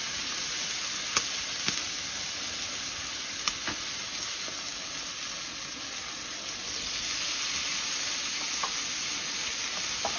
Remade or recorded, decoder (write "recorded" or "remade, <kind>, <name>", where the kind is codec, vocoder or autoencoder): recorded